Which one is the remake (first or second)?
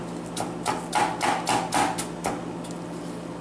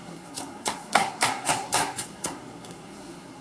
second